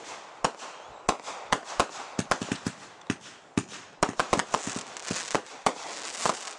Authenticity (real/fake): real